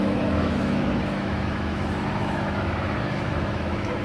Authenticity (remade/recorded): remade